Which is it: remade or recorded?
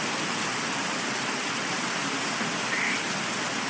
recorded